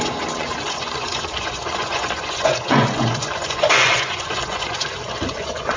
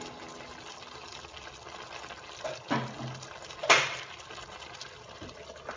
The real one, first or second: second